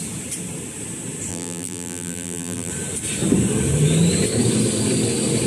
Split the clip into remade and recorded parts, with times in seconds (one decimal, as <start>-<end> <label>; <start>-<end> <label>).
0.0-1.3 recorded; 1.3-2.7 remade; 2.7-5.5 recorded